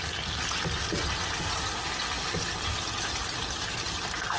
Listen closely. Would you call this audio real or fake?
real